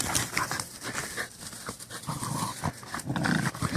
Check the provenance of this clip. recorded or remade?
recorded